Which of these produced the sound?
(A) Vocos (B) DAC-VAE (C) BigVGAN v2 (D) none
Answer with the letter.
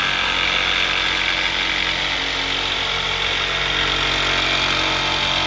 D